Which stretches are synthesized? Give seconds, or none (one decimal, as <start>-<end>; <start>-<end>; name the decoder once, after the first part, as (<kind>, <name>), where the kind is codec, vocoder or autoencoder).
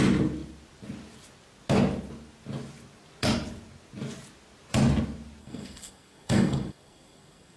5.4-7.6 (codec, SNAC)